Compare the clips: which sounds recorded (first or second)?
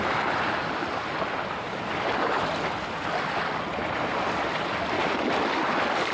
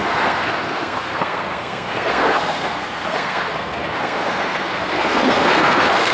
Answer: first